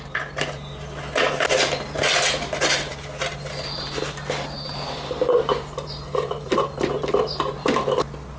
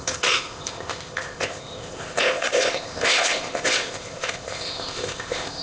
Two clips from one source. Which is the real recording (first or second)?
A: first